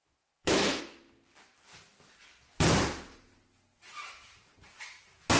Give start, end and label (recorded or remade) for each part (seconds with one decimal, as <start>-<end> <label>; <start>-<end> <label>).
0.0-0.8 remade; 0.8-5.4 recorded